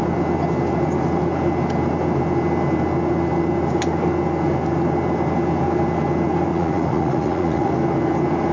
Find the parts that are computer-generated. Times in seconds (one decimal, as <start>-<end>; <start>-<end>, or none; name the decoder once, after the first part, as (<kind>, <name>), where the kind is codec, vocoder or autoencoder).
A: 6.5-7.7 (vocoder, Vocos)